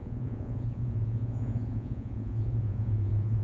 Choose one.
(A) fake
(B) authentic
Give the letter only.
A